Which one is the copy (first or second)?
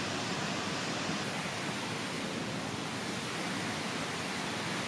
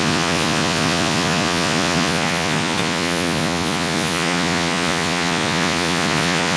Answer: second